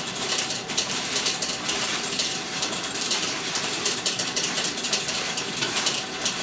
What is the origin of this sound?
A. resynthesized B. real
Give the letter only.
A